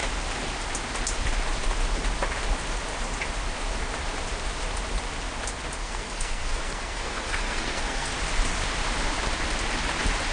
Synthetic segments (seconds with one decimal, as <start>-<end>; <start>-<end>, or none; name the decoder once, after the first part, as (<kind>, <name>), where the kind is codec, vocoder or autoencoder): 5.8-8.1 (codec, SNAC)